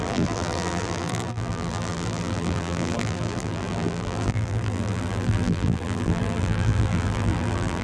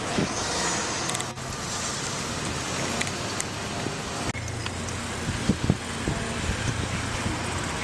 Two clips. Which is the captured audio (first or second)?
second